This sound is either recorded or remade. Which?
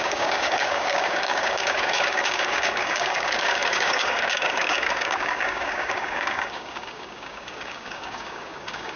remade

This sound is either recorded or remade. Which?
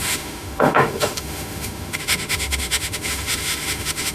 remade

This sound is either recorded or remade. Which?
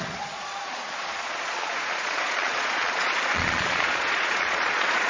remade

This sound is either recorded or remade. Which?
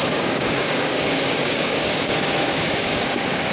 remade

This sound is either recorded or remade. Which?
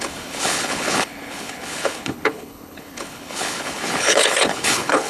remade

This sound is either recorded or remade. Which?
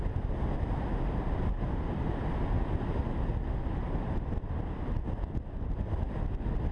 recorded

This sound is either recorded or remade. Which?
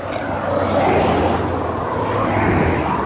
recorded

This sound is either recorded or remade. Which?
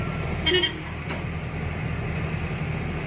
recorded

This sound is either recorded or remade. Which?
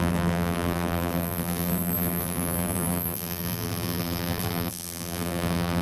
remade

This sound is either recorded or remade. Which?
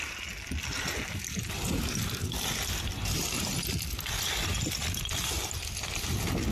recorded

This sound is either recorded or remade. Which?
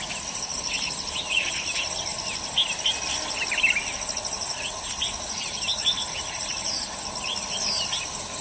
recorded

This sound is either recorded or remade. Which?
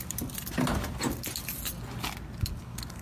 recorded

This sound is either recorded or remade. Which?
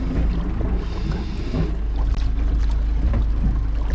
recorded